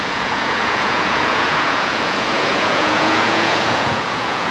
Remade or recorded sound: remade